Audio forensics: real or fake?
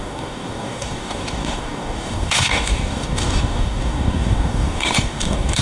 fake